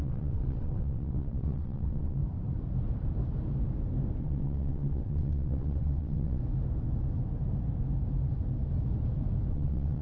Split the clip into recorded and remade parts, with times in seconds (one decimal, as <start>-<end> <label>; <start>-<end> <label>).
0.0-2.2 remade; 2.2-4.2 recorded; 4.2-6.4 remade; 6.4-9.5 recorded; 9.5-10.0 remade